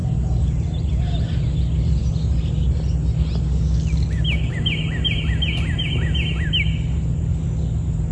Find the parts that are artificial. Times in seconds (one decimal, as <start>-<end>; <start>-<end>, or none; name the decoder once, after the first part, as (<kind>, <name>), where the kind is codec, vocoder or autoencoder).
none